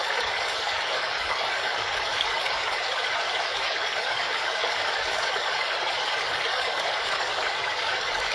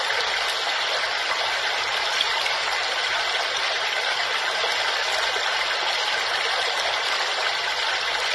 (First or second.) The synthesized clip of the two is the first